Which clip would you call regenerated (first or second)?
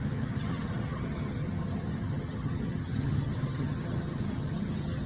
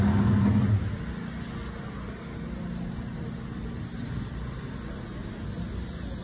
first